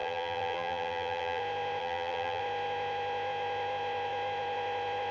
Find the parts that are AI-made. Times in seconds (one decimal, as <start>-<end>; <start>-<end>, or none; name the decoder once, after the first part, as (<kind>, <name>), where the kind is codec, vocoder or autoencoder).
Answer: 0.0-1.4 (vocoder, BigVGAN v2); 1.8-2.4